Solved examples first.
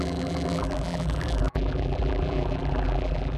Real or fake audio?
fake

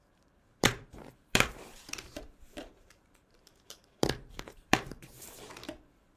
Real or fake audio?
fake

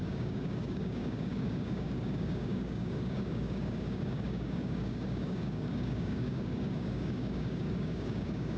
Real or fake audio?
fake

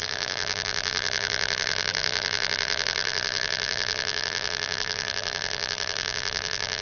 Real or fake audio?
fake